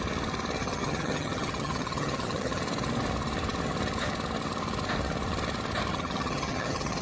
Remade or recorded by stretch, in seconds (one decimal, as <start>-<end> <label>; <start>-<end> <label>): 0.0-0.6 recorded; 0.6-2.6 remade; 2.6-5.9 recorded; 5.9-7.0 remade